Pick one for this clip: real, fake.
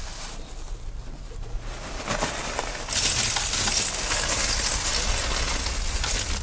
real